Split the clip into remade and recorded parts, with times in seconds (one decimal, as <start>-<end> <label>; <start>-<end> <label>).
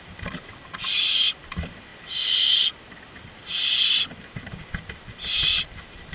0.0-1.9 remade; 1.9-5.6 recorded; 5.6-6.1 remade